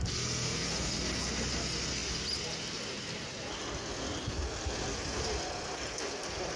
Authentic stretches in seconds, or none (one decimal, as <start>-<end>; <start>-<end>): 0.0-6.6